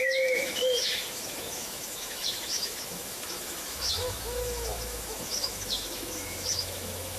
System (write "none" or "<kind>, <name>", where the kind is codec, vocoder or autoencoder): autoencoder, DAC-VAE